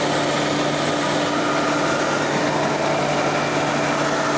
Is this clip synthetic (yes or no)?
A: no